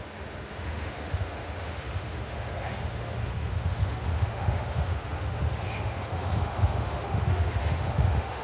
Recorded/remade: remade